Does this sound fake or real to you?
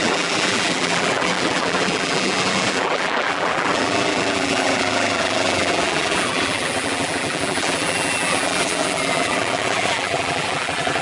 fake